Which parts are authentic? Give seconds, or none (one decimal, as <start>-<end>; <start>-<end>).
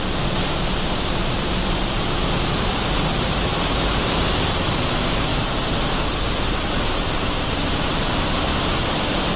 0.0-1.2; 4.1-5.3; 8.7-9.4